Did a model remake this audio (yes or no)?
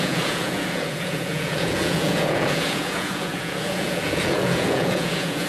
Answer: yes